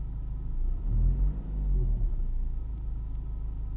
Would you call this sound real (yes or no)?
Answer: yes